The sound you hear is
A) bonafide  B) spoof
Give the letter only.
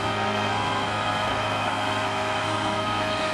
B